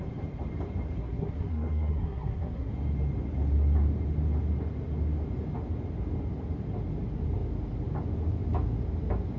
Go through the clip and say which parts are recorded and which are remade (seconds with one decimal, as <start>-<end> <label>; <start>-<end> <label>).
0.0-1.0 recorded; 1.0-2.7 remade; 2.7-9.4 recorded